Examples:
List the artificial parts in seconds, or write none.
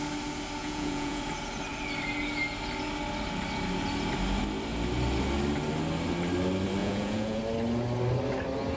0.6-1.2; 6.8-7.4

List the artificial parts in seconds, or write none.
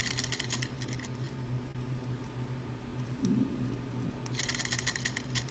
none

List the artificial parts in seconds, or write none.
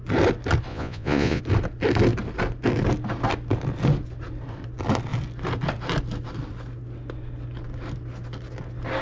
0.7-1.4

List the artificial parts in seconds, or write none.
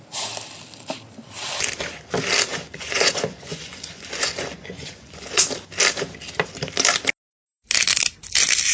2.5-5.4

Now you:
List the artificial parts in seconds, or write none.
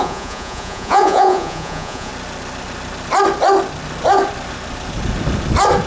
0.0-2.1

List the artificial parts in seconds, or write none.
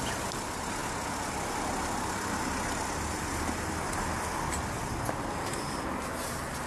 none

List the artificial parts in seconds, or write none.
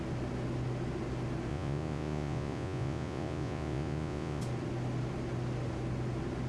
1.5-4.4